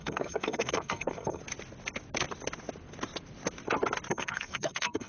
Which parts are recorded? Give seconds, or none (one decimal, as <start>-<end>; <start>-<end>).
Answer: 1.4-4.1